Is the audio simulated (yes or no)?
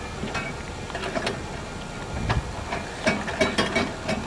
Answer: no